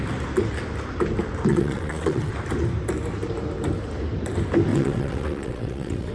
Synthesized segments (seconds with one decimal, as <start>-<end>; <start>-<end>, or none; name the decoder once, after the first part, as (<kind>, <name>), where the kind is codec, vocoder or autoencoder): 1.5-2.3 (vocoder, WaveNeXt); 4.7-6.1